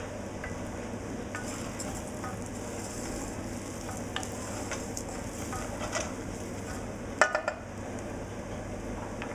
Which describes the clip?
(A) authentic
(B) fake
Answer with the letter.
A